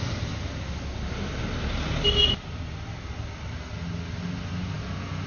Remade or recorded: recorded